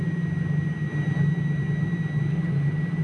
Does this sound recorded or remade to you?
recorded